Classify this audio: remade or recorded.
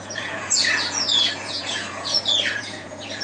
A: remade